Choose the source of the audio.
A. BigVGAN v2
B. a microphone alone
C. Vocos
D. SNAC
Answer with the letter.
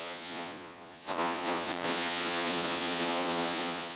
C